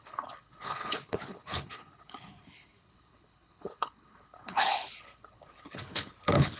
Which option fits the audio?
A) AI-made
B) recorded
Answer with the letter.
A